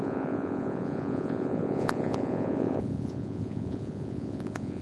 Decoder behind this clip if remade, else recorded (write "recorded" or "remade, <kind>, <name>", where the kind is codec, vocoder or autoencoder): remade, vocoder, Vocos